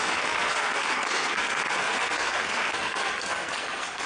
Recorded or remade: remade